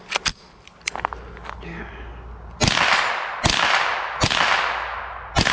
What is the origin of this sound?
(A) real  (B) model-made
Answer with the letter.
A